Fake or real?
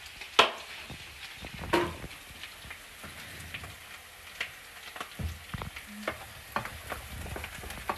real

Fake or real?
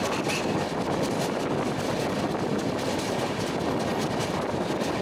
real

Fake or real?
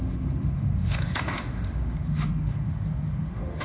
fake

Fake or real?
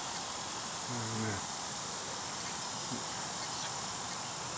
real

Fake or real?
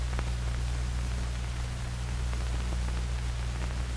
real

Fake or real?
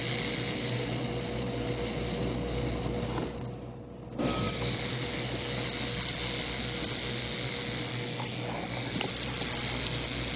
real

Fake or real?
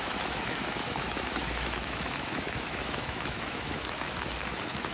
fake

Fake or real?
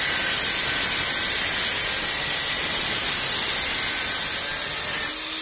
real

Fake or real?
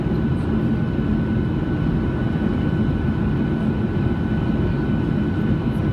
real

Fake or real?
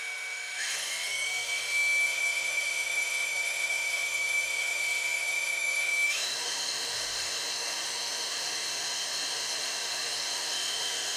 fake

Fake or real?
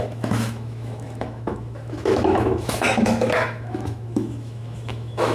fake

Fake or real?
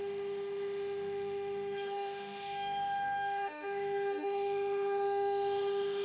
fake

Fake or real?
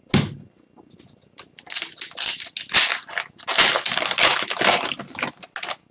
real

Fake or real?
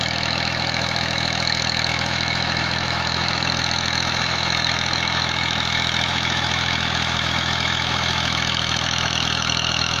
fake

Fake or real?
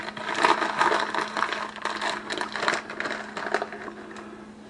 real